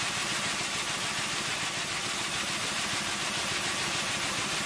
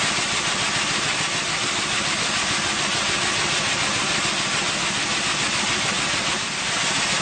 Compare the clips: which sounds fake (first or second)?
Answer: first